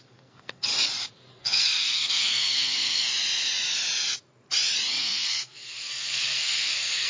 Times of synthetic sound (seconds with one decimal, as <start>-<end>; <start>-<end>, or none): 0.0-0.7; 1.3-3.1; 5.0-7.1